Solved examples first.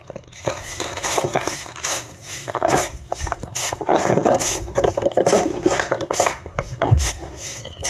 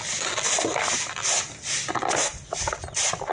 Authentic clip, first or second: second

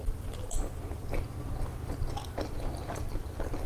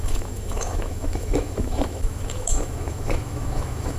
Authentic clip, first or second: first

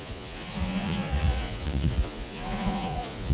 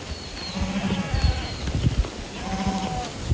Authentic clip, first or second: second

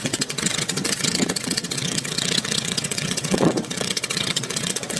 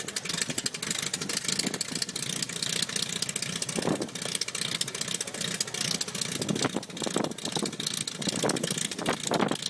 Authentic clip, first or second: second